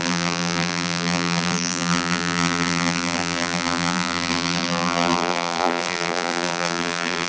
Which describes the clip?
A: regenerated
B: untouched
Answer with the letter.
A